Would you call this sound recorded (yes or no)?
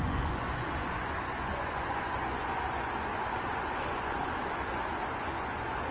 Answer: no